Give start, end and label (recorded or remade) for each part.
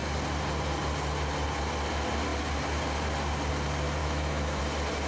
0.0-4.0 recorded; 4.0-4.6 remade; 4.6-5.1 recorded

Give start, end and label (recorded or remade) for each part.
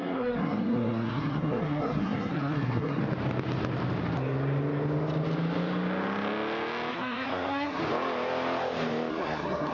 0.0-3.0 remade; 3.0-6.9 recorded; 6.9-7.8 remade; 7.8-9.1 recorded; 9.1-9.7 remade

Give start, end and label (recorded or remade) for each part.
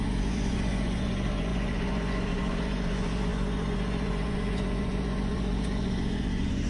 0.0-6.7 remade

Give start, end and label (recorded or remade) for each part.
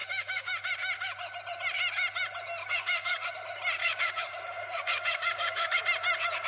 0.0-0.5 remade; 0.5-2.6 recorded; 2.6-3.3 remade; 3.3-3.8 recorded; 3.8-5.8 remade; 5.8-6.5 recorded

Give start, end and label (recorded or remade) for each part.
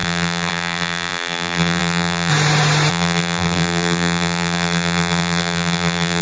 0.0-2.3 remade; 2.3-2.9 recorded; 2.9-6.2 remade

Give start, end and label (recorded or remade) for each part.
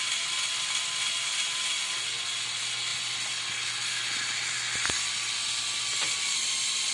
0.0-6.9 recorded